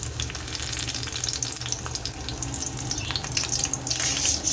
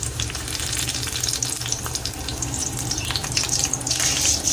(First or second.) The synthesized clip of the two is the second